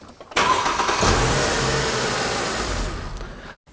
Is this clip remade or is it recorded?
recorded